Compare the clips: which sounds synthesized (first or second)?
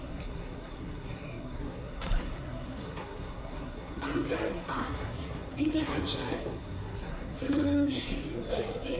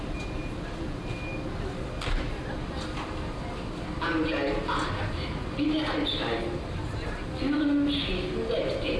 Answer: first